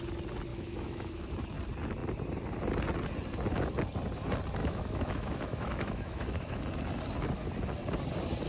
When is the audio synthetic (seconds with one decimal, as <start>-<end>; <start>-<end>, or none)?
0.5-1.3; 4.6-6.6